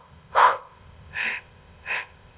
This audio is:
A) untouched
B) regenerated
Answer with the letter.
B